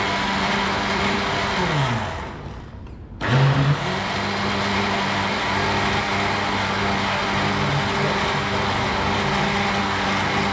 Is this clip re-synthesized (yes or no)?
no